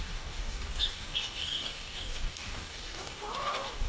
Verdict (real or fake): fake